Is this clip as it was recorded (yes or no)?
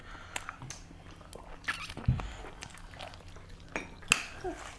yes